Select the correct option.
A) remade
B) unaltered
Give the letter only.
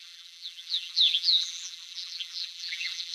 A